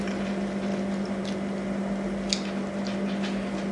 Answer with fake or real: real